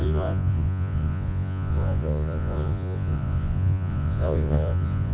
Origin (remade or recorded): remade